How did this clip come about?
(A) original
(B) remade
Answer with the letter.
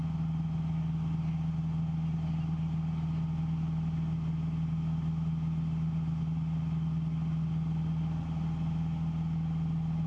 A